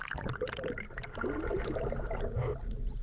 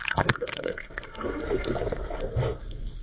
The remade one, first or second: second